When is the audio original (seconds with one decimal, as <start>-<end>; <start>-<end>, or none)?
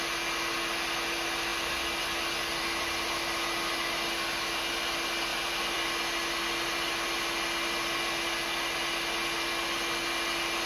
0.0-5.3; 5.9-10.7